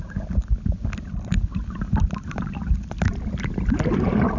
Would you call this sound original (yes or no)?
yes